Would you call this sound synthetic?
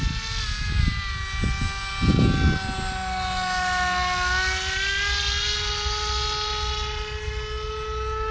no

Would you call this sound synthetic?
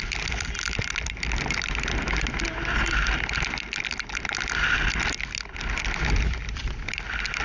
no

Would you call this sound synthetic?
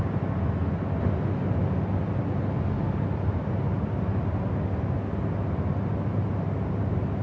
no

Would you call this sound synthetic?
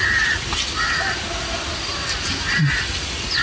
no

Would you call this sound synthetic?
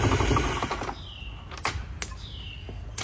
no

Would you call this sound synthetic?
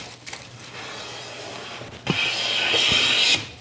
no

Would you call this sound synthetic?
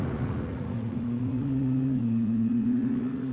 yes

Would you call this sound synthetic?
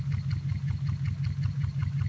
no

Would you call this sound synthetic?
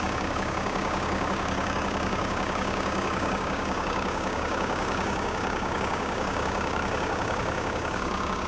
yes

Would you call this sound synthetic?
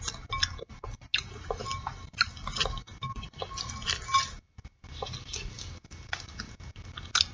no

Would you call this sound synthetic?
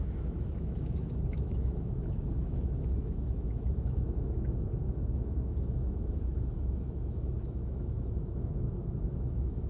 yes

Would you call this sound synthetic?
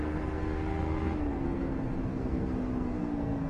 yes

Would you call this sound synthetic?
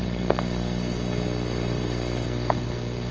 yes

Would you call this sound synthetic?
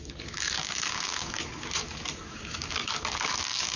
yes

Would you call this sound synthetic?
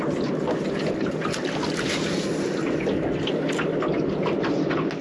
no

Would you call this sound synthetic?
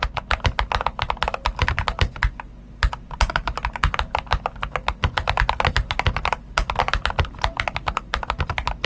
no